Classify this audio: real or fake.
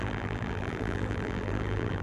fake